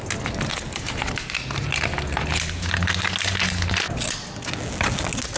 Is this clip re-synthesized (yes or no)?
no